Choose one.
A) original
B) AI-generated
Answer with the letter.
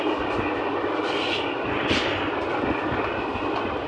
A